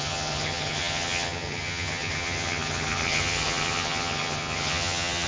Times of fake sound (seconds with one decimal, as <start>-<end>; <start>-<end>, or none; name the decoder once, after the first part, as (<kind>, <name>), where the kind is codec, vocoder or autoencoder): 0.0-5.3 (vocoder, HiFi-GAN)